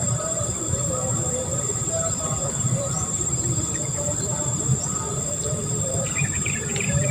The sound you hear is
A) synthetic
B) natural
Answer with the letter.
A